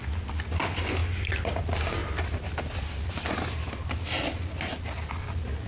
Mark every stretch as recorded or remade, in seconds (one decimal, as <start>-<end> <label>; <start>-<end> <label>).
0.0-5.7 recorded